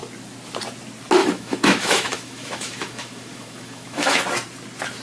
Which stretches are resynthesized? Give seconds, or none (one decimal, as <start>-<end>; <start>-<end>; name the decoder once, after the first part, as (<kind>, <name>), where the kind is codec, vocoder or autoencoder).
1.2-4.2 (autoencoder, DAC-VAE)